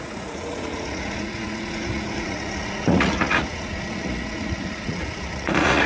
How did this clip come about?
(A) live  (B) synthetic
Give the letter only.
B